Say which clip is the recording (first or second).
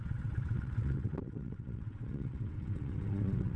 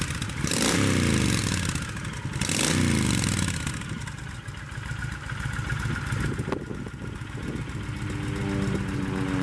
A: second